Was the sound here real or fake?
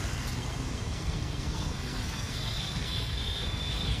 fake